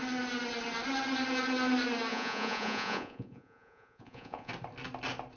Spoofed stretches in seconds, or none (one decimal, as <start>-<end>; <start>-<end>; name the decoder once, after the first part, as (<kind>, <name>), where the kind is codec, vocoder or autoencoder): 2.1-4.5 (vocoder, Vocos)